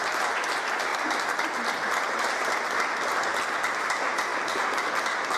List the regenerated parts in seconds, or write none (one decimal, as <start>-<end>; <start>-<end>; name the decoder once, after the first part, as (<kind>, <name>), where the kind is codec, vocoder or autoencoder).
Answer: none